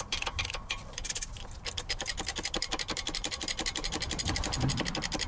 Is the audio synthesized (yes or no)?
yes